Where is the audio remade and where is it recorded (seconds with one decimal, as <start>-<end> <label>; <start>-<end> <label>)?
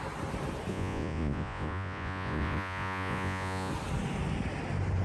0.0-0.7 recorded; 0.7-3.7 remade; 3.7-5.0 recorded